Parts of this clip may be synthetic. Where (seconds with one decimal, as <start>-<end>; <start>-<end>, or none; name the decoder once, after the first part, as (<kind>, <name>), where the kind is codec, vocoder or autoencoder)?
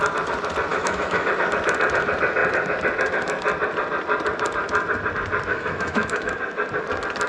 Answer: 0.7-1.3 (autoencoder, DAC-VAE); 5.5-6.4